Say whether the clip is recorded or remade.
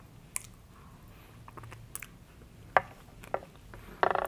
recorded